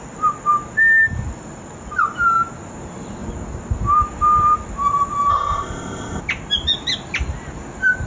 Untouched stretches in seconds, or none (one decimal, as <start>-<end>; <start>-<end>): 0.0-5.3; 6.2-8.1